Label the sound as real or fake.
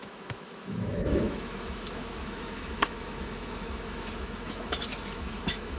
fake